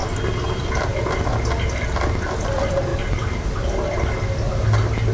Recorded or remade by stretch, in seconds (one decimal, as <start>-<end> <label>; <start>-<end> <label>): 0.0-5.1 recorded